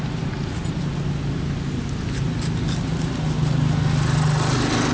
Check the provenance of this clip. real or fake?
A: real